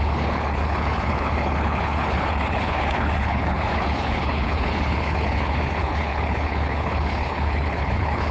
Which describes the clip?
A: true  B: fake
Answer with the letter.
B